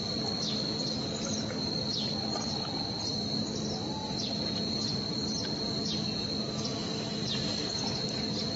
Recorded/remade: recorded